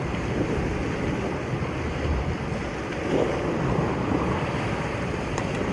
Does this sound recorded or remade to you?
recorded